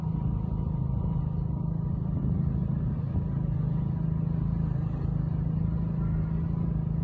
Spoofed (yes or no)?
no